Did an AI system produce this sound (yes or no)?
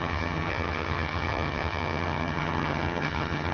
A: yes